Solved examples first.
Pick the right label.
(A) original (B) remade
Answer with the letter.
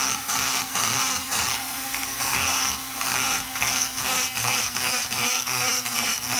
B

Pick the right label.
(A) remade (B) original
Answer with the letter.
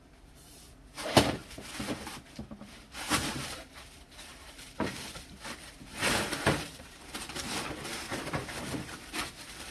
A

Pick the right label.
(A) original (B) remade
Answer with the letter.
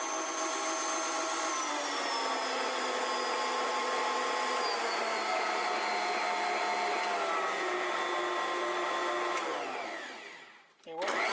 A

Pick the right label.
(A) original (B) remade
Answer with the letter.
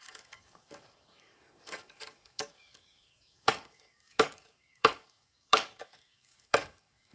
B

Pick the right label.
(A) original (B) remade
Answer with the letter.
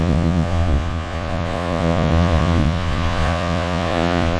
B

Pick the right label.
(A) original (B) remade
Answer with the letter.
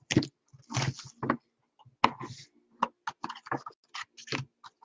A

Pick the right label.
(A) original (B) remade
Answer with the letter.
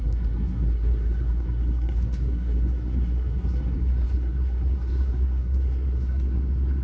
B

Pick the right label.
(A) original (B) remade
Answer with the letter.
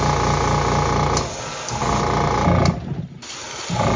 A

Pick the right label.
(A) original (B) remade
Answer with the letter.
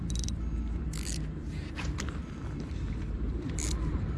B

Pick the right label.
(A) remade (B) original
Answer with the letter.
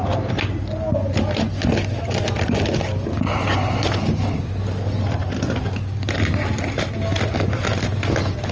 B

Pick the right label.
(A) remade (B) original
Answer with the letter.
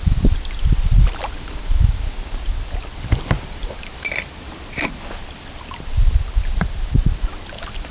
B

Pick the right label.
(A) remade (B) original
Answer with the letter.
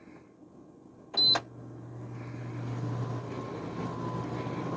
B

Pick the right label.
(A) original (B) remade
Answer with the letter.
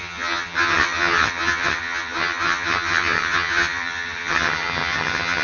B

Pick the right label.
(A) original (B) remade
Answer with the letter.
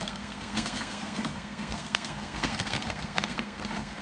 B